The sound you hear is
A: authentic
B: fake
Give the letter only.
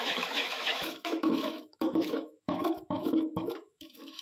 B